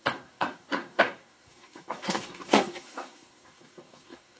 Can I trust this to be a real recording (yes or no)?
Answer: no